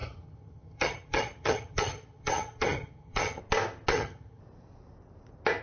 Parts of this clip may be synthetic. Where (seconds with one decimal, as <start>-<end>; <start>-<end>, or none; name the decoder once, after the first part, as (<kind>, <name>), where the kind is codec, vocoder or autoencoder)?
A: 0.0-3.4 (vocoder, HiFi-GAN); 3.9-4.4